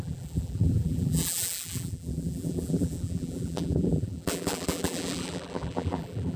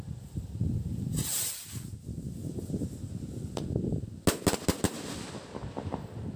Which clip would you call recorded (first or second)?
second